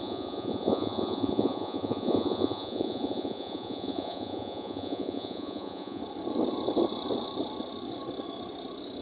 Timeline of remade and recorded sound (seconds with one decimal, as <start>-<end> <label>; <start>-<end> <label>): 0.0-6.0 remade; 6.0-9.0 recorded